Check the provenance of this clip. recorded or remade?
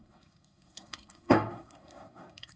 remade